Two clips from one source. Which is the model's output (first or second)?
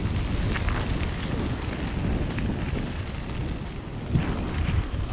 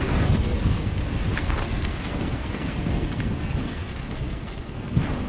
second